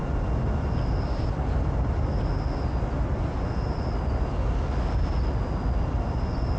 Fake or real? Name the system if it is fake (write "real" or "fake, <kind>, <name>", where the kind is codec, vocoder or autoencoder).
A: real